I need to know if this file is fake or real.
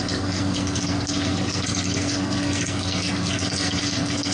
fake